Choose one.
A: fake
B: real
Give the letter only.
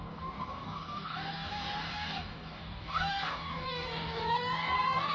A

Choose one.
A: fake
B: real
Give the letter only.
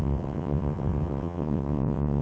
A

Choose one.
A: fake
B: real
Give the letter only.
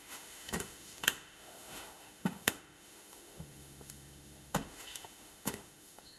A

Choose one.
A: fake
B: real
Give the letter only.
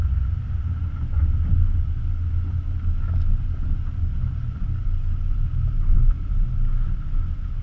B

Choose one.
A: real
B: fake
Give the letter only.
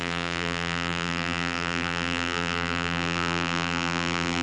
B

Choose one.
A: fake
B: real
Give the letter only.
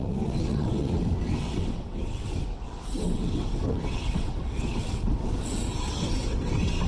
A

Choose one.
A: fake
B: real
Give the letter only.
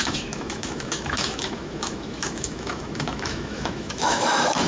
A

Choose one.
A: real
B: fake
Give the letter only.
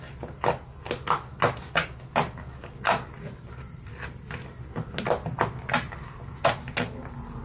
A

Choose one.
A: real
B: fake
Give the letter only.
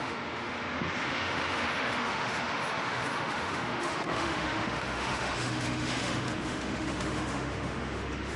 B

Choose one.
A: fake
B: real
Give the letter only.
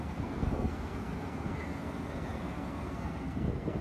A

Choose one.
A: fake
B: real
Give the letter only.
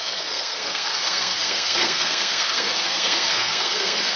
A